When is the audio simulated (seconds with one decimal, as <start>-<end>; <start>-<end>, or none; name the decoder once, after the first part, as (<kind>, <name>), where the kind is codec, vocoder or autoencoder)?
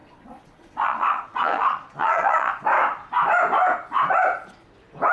0.0-2.5 (vocoder, Vocos)